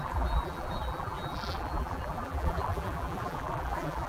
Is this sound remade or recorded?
remade